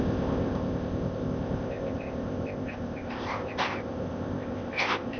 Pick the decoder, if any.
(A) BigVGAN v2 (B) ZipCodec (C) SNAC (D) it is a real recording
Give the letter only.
B